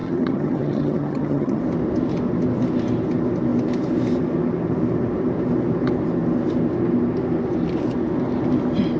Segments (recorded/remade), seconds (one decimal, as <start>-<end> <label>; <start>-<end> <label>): 0.0-1.6 remade; 1.6-9.0 recorded